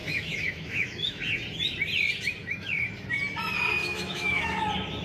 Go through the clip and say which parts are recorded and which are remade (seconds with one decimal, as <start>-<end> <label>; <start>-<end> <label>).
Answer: 0.0-1.2 remade; 1.2-2.4 recorded; 2.4-3.1 remade; 3.1-3.8 recorded; 3.8-4.6 remade; 4.6-5.0 recorded